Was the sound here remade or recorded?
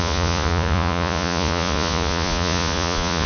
remade